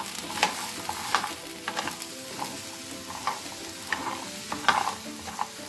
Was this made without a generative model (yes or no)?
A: yes